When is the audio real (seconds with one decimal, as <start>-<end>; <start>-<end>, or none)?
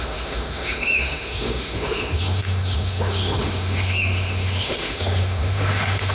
none